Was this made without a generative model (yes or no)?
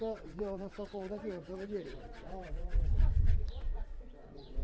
no